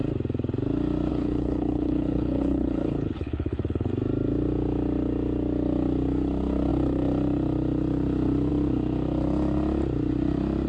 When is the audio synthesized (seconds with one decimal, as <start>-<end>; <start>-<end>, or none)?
1.1-3.9